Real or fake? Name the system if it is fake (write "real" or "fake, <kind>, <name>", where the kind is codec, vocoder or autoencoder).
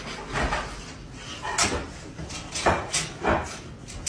real